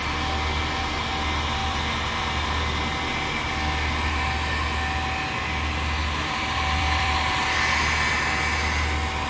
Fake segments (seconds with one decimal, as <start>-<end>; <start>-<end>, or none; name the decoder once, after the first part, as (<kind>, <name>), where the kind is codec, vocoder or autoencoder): 1.6-2.8 (vocoder, BigVGAN v2); 6.0-7.4